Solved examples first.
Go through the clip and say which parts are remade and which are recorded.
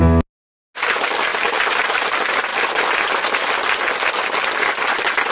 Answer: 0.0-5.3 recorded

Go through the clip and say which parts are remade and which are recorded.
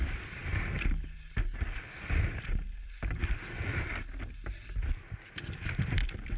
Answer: 0.0-6.4 recorded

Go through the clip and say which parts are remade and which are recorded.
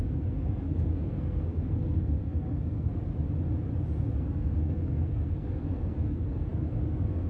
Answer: 0.0-3.0 remade; 3.0-4.2 recorded; 4.2-7.3 remade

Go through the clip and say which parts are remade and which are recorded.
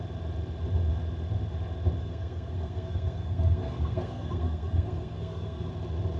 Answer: 0.0-2.0 recorded; 2.0-5.7 remade; 5.7-6.2 recorded